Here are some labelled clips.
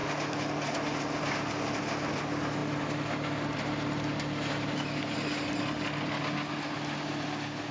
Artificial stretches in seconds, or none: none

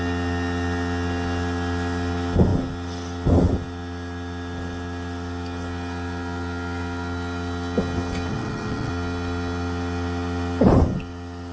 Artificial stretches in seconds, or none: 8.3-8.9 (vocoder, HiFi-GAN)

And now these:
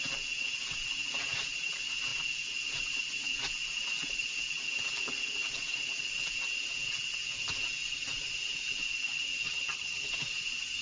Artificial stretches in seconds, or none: 9.5-10.1 (vocoder, HiFi-GAN)

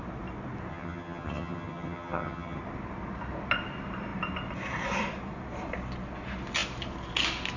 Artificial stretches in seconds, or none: 0.7-2.6 (vocoder, HiFi-GAN)

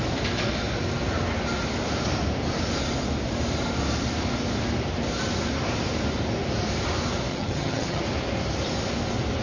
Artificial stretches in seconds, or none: 7.3-8.0 (vocoder, HiFi-GAN)

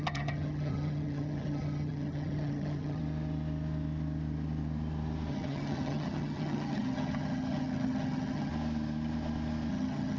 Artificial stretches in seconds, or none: 0.0-3.0 (vocoder, HiFi-GAN); 5.3-8.5; 9.7-10.2

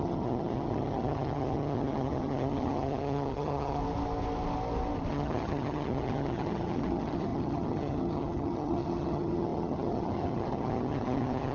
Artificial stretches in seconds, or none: 0.0-3.8 (vocoder, HiFi-GAN); 5.1-11.5